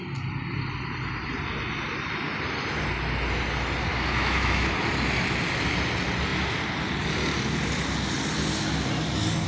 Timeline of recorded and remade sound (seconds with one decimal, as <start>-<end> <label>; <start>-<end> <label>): 0.0-3.9 recorded; 3.9-4.7 remade; 4.7-9.5 recorded